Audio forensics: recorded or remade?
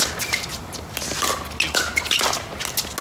recorded